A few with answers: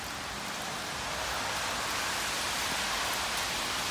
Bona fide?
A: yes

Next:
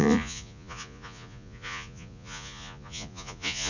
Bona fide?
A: no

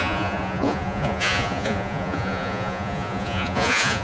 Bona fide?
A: no